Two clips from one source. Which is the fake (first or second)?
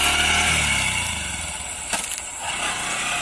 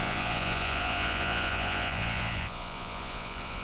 second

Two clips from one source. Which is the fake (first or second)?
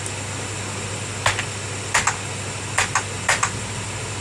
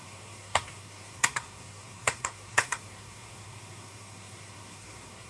second